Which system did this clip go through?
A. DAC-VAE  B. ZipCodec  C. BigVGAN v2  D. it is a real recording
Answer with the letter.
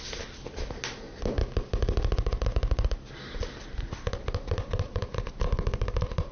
D